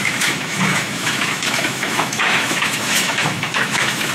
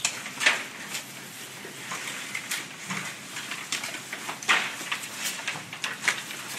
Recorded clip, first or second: second